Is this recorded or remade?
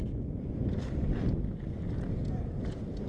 recorded